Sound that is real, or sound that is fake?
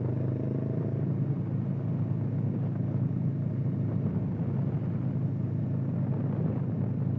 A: real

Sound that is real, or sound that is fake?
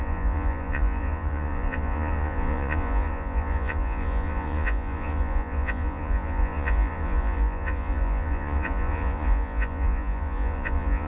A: fake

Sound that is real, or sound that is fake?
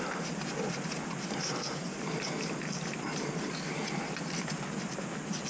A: real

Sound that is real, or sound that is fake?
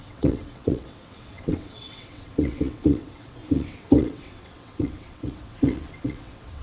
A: fake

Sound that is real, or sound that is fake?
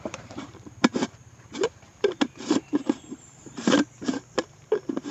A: fake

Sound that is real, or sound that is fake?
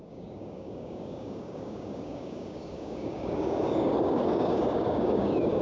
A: fake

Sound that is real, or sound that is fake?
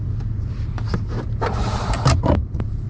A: fake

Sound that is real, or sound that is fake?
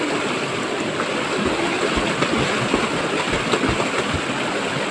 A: real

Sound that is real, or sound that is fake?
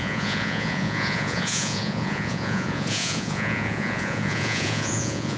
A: fake